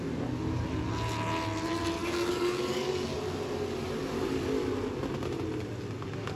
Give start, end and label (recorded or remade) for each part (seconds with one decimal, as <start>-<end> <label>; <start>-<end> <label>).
0.0-2.0 recorded; 2.0-3.2 remade; 3.2-6.4 recorded